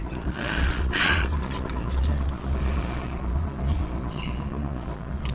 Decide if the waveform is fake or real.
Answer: fake